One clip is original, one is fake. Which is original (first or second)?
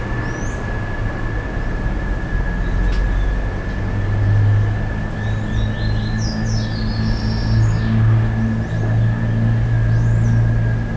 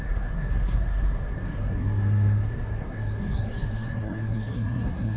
first